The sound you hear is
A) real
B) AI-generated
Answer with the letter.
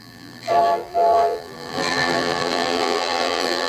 B